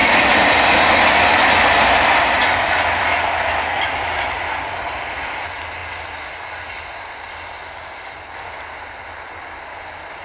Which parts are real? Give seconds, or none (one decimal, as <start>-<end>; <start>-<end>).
0.0-10.2